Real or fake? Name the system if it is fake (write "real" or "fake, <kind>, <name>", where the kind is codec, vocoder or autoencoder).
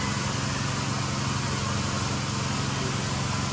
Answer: real